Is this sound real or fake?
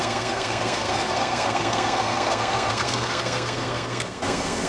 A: fake